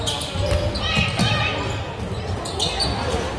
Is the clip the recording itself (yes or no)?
yes